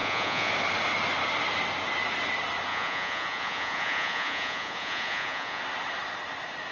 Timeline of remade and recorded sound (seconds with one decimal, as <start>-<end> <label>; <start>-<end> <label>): 0.0-0.5 remade; 0.5-2.7 recorded; 2.7-5.6 remade; 5.6-6.7 recorded